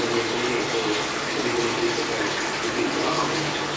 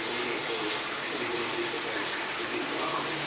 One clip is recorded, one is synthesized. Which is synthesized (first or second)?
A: second